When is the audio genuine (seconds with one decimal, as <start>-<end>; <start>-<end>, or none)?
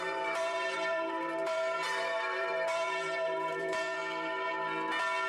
4.0-5.3